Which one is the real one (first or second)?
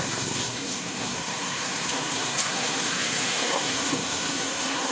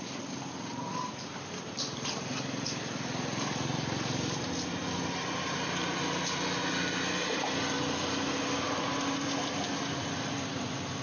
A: second